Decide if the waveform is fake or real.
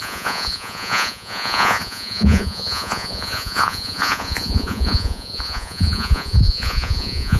fake